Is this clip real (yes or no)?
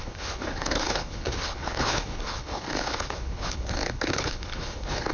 no